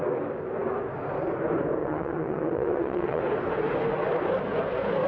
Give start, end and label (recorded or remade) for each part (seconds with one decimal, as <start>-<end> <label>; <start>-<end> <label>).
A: 0.0-1.8 recorded; 1.8-3.2 remade; 3.2-5.1 recorded